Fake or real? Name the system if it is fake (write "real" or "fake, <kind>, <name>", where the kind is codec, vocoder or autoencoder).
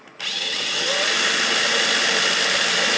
real